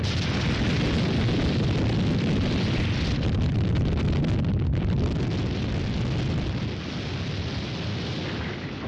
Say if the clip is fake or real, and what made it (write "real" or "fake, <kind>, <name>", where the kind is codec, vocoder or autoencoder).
real